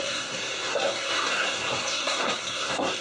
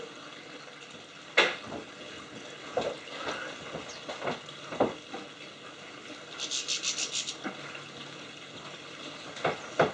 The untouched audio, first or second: second